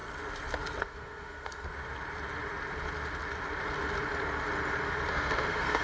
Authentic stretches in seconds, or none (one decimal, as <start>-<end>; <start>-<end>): 0.0-0.8; 1.7-5.1